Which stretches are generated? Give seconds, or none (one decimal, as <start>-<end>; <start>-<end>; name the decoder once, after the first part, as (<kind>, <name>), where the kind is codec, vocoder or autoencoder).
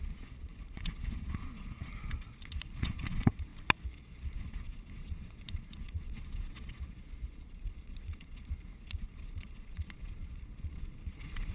0.0-3.5 (vocoder, Vocos); 4.0-11.5